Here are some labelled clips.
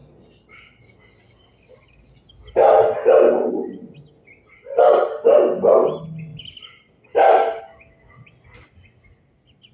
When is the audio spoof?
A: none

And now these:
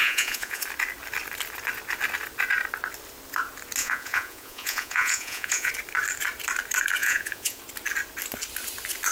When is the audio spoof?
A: 0.0-0.6 (vocoder, Vocos); 3.8-5.7; 7.0-7.6

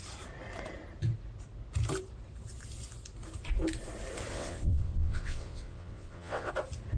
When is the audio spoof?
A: 4.3-6.5 (vocoder, WaveNeXt)

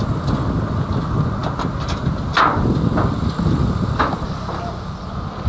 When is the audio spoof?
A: none

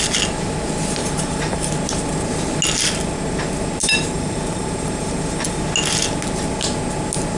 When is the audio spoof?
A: 1.0-1.7 (vocoder, BigVGAN v2); 3.8-5.6

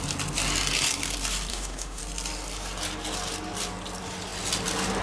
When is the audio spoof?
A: 1.5-2.0 (autoencoder, DAC-VAE)

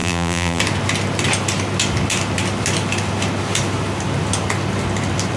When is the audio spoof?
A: 0.0-0.6 (vocoder, BigVGAN v2)

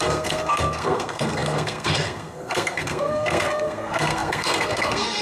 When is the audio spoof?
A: 0.0-5.2 (codec, SNAC)